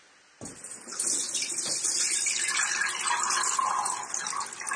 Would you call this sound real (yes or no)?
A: yes